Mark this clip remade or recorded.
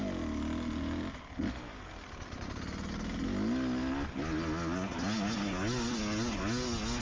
recorded